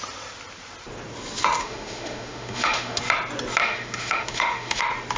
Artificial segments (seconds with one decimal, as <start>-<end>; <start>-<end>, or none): 1.6-3.0; 3.6-4.8